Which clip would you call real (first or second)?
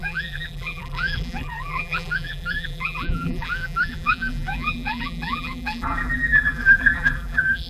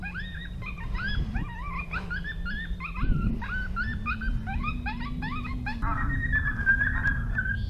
second